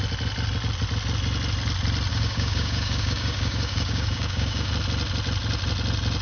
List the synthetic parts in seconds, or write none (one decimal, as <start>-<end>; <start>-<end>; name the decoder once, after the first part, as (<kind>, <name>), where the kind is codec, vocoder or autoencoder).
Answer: 2.1-4.7 (codec, DAC)